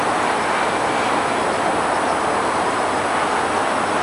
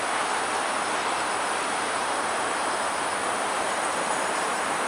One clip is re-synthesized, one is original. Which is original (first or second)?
first